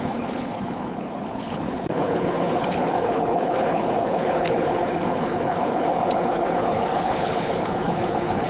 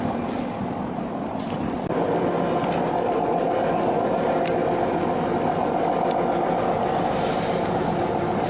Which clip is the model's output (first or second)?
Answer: first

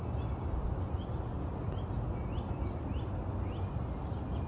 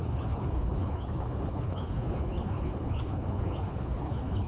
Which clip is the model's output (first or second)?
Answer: second